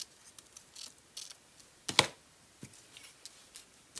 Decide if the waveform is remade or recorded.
recorded